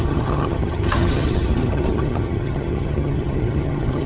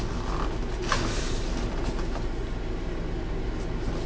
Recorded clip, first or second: second